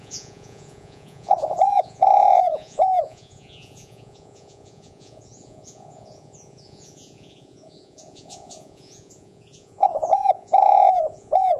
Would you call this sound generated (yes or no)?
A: yes